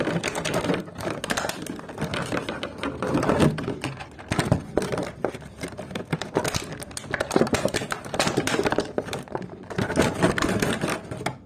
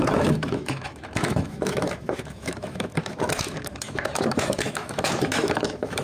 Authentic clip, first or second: first